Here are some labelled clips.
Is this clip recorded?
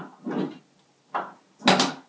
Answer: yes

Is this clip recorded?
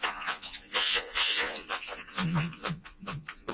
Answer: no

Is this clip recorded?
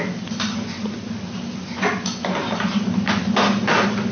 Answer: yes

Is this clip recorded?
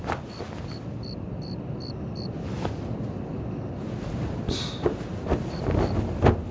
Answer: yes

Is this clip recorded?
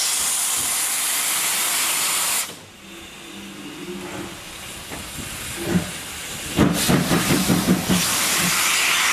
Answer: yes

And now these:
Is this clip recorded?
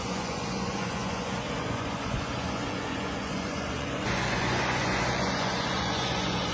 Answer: no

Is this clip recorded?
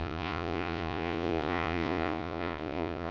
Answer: no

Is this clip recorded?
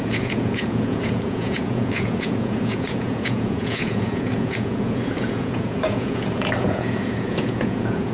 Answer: no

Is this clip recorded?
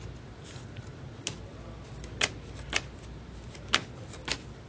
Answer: yes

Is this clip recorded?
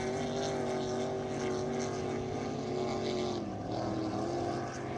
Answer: yes